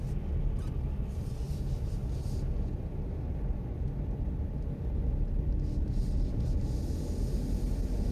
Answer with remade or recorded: recorded